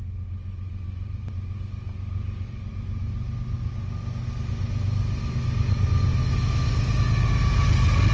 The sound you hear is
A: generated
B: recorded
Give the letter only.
B